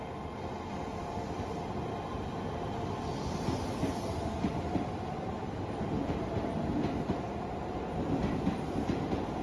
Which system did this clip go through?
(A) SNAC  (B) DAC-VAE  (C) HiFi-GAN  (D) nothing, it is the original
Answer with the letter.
D